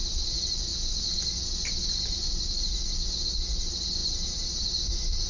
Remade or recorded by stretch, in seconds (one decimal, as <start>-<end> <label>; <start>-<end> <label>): 0.0-5.3 recorded